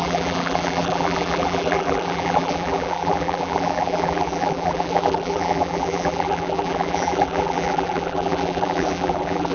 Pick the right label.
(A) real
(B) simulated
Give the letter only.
B